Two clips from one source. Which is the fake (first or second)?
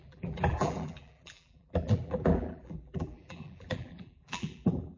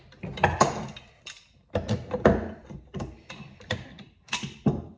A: first